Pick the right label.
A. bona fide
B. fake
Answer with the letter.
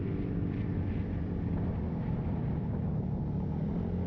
A